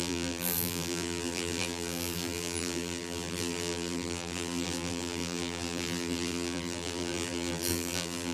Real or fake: fake